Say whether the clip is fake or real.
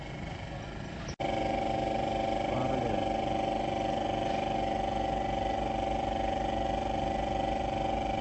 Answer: real